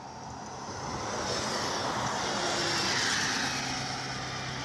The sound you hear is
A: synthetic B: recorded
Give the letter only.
B